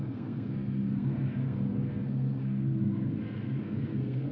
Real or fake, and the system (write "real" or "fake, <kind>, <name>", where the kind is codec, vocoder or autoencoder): fake, codec, SNAC